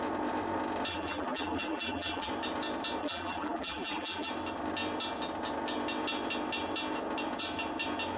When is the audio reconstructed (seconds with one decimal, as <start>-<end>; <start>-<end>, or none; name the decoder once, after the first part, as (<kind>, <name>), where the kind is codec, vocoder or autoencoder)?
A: 0.9-2.3 (vocoder, BigVGAN v2); 3.0-4.3